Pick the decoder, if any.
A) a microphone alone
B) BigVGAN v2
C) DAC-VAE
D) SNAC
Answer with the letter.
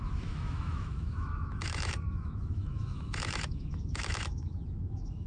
C